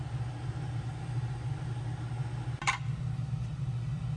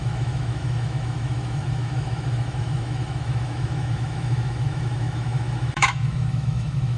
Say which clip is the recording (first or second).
first